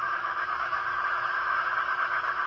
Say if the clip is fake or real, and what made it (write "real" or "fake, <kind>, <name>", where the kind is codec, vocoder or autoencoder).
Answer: fake, autoencoder, DAC-VAE